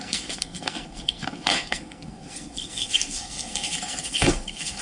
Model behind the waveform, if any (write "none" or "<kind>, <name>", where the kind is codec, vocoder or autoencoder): codec, SNAC